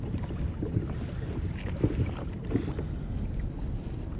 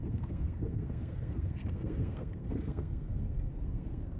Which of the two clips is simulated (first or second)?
second